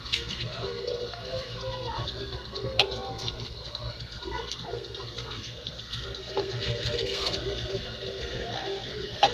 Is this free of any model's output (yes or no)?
no